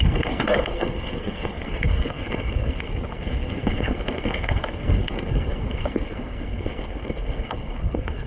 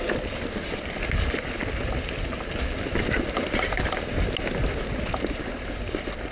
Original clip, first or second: second